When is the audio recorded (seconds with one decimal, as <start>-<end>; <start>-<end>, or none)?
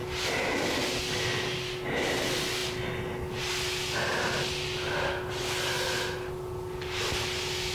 0.0-7.7